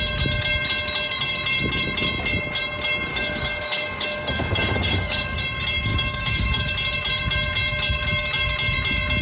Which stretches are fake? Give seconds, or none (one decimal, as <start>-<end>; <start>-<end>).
3.1-5.4; 5.9-6.6